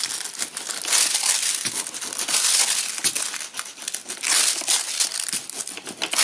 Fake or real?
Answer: real